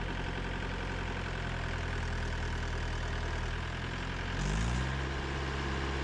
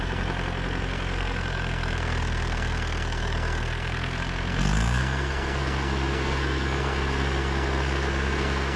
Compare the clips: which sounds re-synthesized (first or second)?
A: second